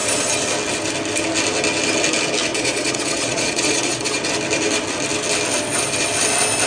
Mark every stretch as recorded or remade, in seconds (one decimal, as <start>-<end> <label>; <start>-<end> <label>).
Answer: 0.0-2.5 recorded; 2.5-4.2 remade; 4.2-6.7 recorded